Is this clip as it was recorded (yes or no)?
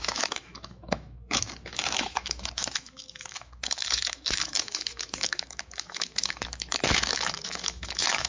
no